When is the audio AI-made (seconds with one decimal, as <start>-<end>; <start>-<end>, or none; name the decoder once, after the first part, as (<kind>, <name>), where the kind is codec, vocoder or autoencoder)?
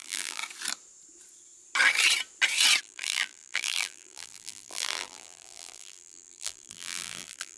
0.0-0.4 (vocoder, BigVGAN v2); 2.8-7.6